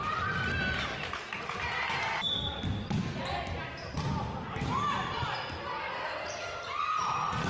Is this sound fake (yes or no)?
no